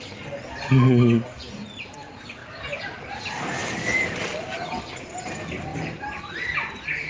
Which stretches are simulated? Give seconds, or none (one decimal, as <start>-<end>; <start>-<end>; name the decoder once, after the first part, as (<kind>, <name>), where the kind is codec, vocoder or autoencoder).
2.4-3.2 (vocoder, BigVGAN v2)